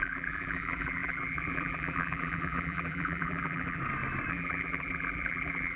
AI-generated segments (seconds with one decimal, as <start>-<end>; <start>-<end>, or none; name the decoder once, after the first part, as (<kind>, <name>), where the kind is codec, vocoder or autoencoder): 0.0-3.8 (vocoder, BigVGAN v2); 4.3-5.8